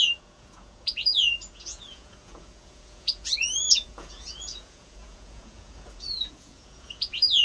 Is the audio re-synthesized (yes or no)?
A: yes